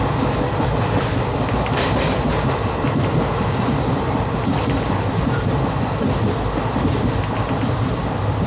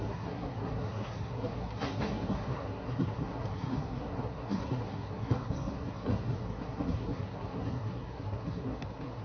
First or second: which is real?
first